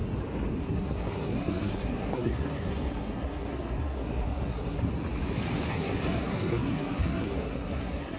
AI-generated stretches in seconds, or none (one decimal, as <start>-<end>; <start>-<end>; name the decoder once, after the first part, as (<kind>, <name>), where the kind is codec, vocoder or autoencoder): 0.6-4.9 (codec, SNAC); 5.7-8.2